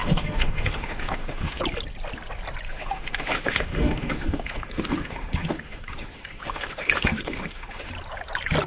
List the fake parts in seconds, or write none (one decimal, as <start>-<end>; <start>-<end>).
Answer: 0.0-1.6; 2.7-7.9